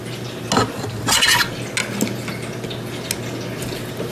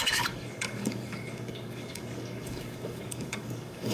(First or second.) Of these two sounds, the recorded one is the first